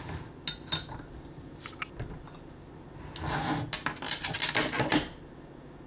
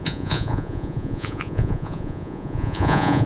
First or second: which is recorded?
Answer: first